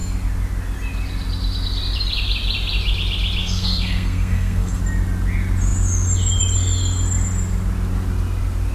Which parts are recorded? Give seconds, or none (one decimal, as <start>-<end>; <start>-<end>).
0.0-3.4; 4.8-8.7